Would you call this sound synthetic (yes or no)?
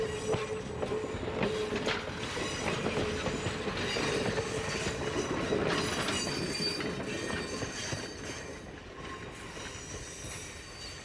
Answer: no